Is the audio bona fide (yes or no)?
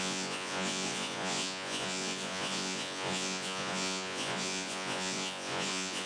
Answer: no